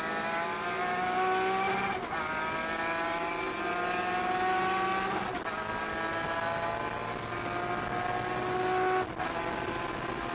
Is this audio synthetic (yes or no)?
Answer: no